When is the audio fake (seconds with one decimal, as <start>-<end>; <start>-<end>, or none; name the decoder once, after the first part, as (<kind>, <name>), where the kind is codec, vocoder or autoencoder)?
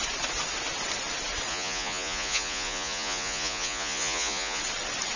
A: 1.5-4.6 (vocoder, Vocos)